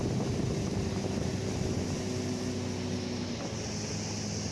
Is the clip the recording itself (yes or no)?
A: yes